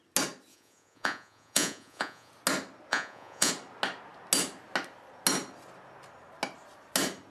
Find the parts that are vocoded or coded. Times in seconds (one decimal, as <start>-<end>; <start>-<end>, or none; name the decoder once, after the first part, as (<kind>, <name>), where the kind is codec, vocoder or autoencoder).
0.5-2.3 (vocoder, Vocos); 2.9-3.5